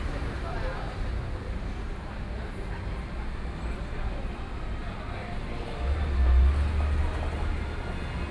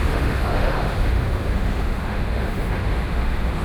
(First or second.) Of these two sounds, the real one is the first